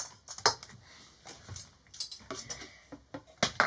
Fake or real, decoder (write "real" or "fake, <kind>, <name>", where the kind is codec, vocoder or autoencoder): real